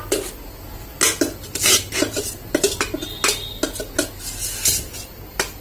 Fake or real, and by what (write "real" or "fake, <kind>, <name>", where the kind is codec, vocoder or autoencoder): real